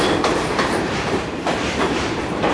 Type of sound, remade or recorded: remade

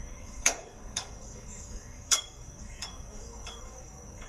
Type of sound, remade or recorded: remade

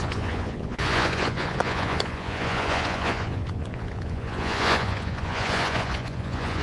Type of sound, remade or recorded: remade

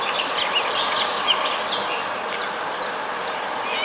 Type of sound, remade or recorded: recorded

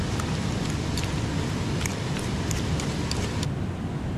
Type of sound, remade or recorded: recorded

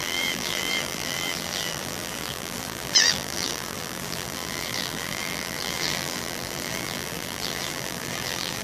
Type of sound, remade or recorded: remade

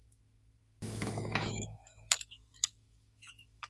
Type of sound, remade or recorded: remade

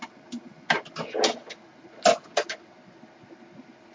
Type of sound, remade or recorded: recorded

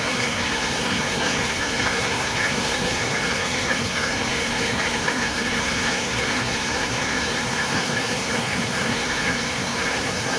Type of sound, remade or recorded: remade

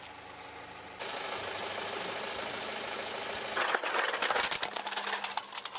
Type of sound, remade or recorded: recorded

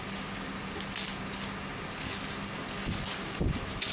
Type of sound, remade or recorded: recorded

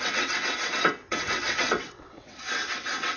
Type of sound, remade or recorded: remade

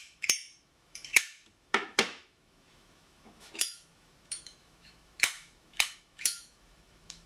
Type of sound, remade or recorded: remade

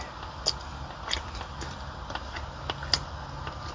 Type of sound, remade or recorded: recorded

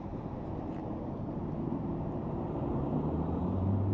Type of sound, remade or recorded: remade